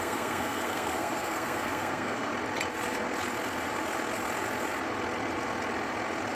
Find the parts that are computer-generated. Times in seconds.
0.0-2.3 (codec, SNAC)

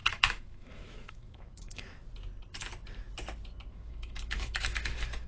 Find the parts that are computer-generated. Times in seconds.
0.0-2.0 (autoencoder, DAC-VAE); 3.7-5.3

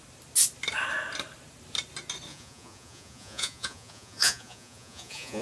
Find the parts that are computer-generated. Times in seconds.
2.3-5.4 (vocoder, Vocos)

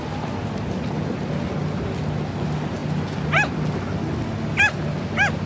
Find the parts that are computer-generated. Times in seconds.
none

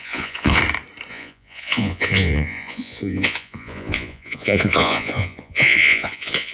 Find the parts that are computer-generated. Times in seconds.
0.0-0.6 (vocoder, Vocos); 1.1-6.5

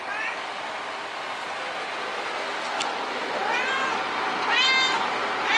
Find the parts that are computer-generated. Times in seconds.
none

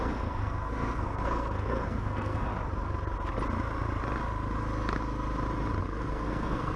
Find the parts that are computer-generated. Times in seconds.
0.0-2.5 (codec, SNAC); 5.8-6.8